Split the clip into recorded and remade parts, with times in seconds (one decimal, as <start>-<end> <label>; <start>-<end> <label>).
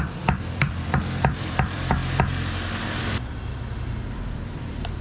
0.0-2.0 remade; 2.0-3.1 recorded; 3.1-5.0 remade